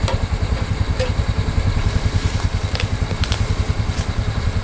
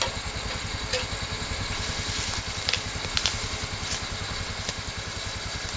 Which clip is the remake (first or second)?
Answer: first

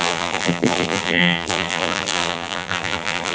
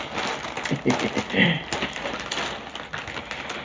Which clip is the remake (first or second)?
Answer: first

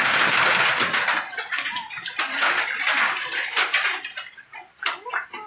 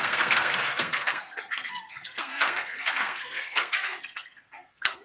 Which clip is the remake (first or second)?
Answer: second